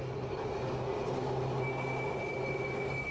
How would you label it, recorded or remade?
recorded